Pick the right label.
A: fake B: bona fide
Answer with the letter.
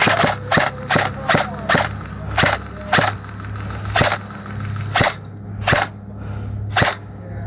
B